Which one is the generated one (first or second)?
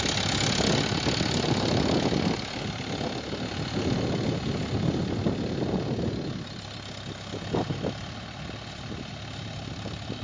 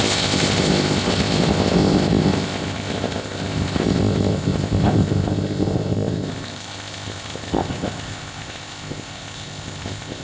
second